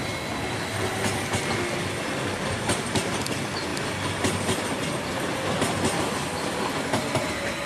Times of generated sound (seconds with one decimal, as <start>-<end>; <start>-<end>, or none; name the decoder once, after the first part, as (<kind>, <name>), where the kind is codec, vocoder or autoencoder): none